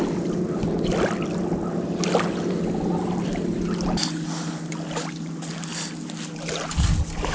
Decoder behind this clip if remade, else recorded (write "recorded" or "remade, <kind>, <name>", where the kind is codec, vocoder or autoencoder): recorded